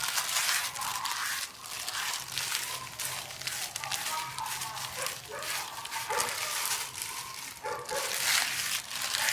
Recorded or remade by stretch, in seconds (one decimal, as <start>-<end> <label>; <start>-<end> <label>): 0.0-9.3 recorded